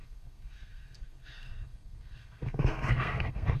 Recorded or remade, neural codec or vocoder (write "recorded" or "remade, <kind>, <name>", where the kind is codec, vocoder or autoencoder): remade, codec, SNAC